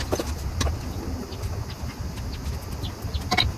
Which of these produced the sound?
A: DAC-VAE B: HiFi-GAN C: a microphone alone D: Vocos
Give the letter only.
C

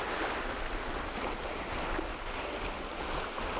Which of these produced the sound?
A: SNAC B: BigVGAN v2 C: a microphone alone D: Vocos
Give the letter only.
C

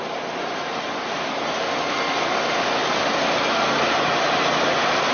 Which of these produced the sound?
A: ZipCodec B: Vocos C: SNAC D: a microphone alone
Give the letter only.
D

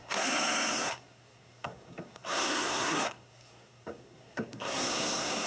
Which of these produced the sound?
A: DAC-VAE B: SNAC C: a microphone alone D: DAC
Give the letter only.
B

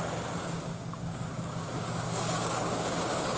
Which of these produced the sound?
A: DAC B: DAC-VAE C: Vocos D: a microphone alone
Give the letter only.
A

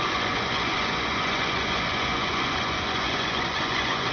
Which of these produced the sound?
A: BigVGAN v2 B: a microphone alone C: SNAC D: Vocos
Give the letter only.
D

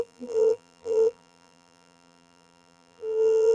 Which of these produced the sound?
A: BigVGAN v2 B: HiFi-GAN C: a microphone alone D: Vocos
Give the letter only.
A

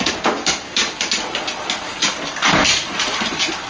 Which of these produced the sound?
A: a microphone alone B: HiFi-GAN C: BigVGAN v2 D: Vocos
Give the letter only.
A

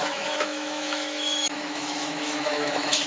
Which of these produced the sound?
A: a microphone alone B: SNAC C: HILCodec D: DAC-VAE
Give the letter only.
D